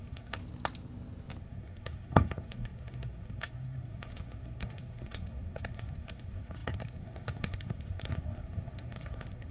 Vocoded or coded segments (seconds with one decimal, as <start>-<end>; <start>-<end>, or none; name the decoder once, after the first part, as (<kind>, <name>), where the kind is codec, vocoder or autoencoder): 0.0-0.4 (codec, SNAC); 1.4-9.5

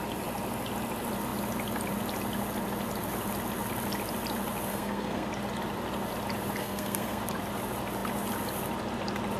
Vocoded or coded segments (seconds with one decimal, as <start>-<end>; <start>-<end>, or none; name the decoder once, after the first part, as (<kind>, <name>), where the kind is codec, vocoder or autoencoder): 4.7-5.3 (codec, SNAC); 6.6-7.2